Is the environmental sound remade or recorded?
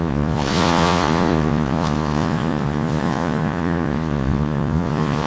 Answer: remade